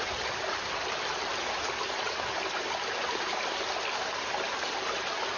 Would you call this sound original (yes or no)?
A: yes